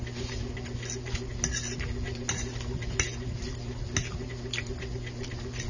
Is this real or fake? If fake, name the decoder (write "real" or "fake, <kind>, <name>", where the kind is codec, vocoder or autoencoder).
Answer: real